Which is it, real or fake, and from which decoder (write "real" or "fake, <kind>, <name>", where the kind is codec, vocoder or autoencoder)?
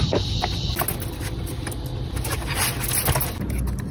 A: real